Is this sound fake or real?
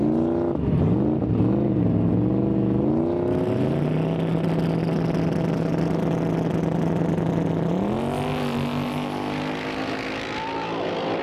real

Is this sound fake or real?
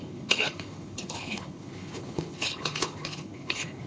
fake